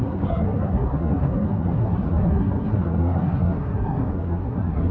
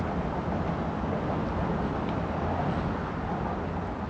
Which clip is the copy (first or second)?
first